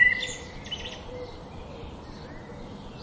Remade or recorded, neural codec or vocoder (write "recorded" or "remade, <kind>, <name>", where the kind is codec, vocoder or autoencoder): recorded